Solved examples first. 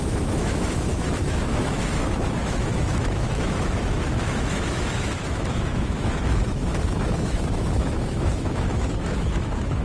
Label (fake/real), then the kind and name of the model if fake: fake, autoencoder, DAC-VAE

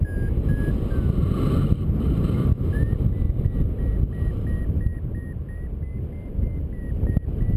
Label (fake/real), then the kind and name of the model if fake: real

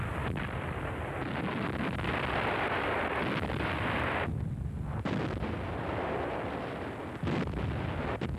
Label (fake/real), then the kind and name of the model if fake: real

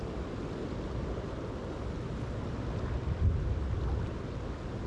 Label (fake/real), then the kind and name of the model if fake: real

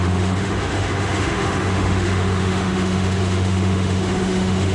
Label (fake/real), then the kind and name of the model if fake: fake, autoencoder, DAC-VAE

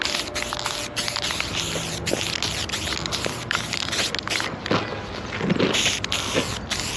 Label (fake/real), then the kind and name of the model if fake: real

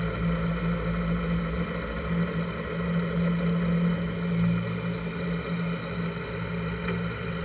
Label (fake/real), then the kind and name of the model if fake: real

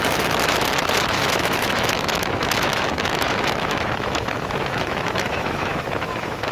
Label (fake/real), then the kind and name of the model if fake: fake, autoencoder, DAC-VAE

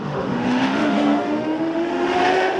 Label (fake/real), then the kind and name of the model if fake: fake, autoencoder, DAC-VAE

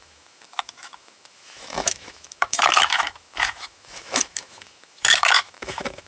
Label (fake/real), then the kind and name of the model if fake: fake, autoencoder, DAC-VAE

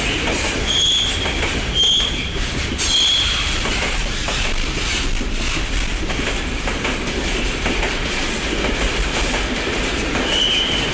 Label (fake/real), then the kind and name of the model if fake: real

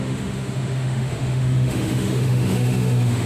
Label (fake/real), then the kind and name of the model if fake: fake, autoencoder, DAC-VAE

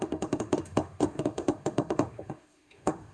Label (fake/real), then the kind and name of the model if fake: fake, autoencoder, DAC-VAE